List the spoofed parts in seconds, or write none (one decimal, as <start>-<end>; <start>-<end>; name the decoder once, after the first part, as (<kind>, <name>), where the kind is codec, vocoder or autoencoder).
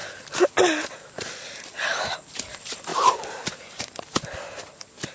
2.9-3.6 (vocoder, BigVGAN v2)